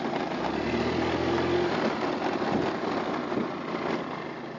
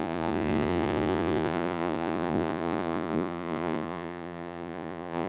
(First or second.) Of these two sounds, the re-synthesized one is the second